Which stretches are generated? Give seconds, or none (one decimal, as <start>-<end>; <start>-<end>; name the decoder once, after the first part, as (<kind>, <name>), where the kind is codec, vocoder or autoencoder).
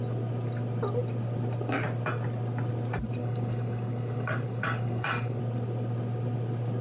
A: 3.2-5.4 (codec, DAC)